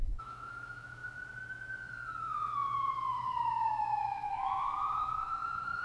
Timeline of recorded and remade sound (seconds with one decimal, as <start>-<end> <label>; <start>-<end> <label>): 0.0-1.0 remade; 1.0-2.2 recorded; 2.2-5.8 remade